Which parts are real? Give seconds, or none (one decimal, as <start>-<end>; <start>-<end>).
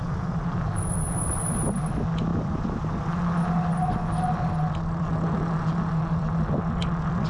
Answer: 0.0-7.3